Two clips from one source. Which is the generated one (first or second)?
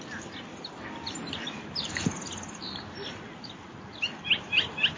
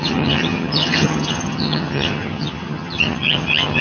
second